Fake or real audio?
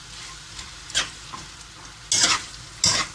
real